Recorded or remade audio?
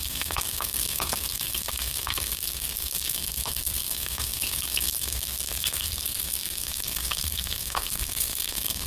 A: remade